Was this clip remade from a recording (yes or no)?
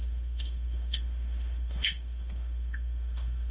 yes